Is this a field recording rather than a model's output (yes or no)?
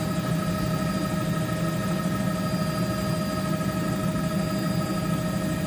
yes